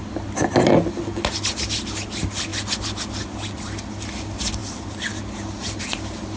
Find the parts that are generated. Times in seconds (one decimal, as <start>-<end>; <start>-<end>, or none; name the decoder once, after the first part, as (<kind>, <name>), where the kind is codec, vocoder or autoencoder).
none